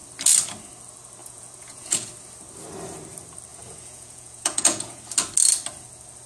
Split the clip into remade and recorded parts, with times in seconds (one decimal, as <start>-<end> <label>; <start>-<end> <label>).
0.0-1.2 recorded; 1.2-2.1 remade; 2.1-3.5 recorded; 3.5-5.0 remade; 5.0-6.3 recorded

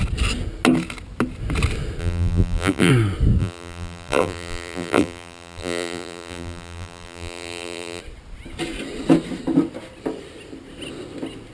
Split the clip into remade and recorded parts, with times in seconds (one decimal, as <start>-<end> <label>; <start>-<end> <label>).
0.0-2.0 recorded; 2.0-2.9 remade; 2.9-3.4 recorded; 3.4-8.0 remade; 8.0-11.5 recorded

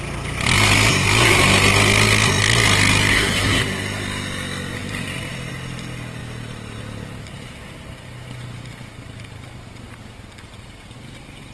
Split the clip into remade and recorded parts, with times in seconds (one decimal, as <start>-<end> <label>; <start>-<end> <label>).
0.0-3.1 recorded; 3.1-3.6 remade; 3.6-11.5 recorded

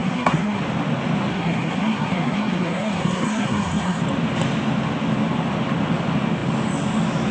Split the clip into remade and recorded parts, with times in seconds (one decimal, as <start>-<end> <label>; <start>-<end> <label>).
0.0-0.6 remade; 0.6-1.3 recorded; 1.3-4.0 remade; 4.0-7.3 recorded

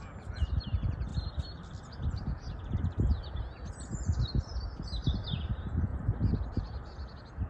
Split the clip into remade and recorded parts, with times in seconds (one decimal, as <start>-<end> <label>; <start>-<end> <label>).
0.0-1.1 recorded; 1.1-3.7 remade; 3.7-4.5 recorded; 4.5-5.4 remade; 5.4-5.9 recorded; 5.9-6.5 remade; 6.5-7.5 recorded

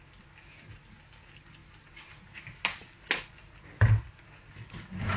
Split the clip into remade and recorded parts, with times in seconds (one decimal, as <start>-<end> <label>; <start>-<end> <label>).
0.0-5.2 recorded

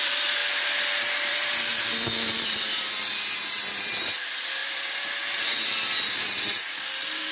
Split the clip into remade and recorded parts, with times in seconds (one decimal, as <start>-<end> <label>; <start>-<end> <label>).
0.0-0.4 remade; 0.4-1.0 recorded; 1.0-7.3 remade

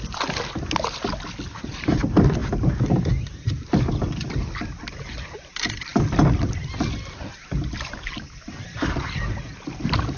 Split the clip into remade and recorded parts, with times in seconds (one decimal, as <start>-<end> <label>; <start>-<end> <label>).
0.0-10.2 recorded